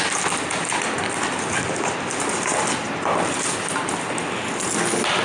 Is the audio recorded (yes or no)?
yes